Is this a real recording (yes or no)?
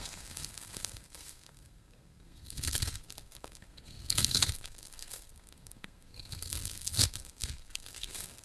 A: no